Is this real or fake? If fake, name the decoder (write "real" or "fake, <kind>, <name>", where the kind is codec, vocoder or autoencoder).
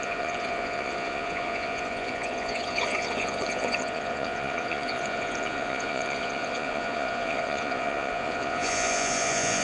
fake, vocoder, Vocos